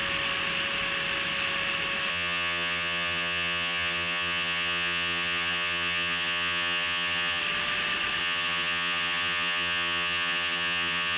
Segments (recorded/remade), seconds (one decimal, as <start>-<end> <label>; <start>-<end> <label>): 0.0-2.1 recorded; 2.1-7.4 remade; 7.4-8.2 recorded; 8.2-11.2 remade